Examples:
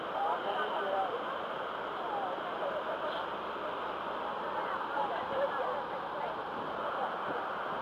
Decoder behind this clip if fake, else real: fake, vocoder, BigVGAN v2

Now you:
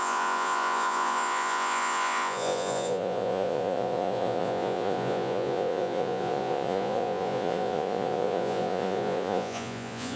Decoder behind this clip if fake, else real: fake, vocoder, Vocos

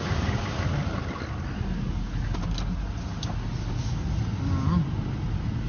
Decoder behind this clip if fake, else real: real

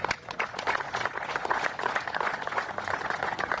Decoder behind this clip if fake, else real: fake, vocoder, Vocos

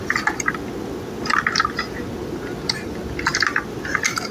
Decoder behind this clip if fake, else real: real